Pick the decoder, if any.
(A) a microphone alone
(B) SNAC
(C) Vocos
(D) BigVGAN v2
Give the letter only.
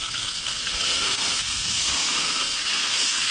B